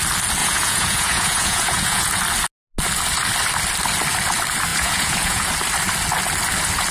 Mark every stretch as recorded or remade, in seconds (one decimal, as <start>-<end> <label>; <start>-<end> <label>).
0.0-0.4 recorded; 0.4-2.2 remade; 2.2-4.7 recorded; 4.7-5.5 remade; 5.5-6.9 recorded